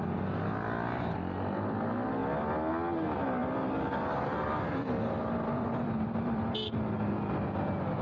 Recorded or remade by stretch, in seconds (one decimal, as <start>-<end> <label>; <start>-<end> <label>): 0.0-2.2 recorded; 2.2-2.7 remade; 2.7-3.4 recorded; 3.4-7.1 remade; 7.1-8.0 recorded

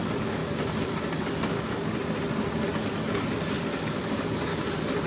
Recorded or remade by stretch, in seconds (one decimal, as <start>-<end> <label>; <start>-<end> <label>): 0.0-0.4 remade; 0.4-3.5 recorded; 3.5-4.5 remade; 4.5-5.1 recorded